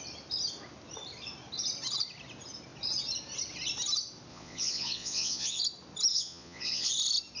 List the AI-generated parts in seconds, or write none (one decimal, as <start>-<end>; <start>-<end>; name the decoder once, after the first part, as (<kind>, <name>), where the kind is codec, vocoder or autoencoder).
4.3-5.6 (vocoder, Vocos); 6.1-6.9